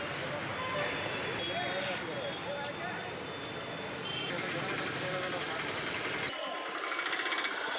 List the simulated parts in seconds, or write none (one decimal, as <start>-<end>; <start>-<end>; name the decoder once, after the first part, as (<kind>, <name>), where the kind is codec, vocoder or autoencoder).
none